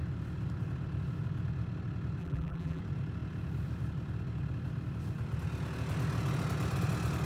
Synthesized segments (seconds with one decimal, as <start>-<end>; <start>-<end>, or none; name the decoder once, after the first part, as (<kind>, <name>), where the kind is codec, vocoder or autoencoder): 2.2-2.8 (vocoder, BigVGAN v2)